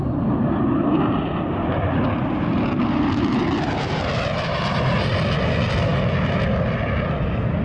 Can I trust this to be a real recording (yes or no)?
no